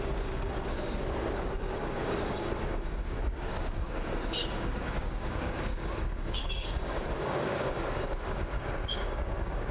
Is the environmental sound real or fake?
fake